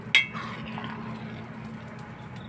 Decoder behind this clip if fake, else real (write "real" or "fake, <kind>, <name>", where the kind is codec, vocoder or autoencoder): real